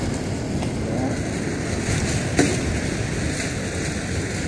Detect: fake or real real